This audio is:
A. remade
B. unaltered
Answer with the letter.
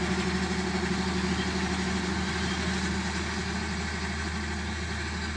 B